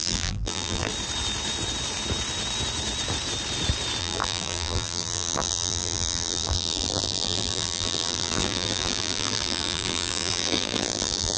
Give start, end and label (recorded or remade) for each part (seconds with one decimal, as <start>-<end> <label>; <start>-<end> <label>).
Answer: 0.0-0.9 remade; 0.9-4.0 recorded; 4.0-11.4 remade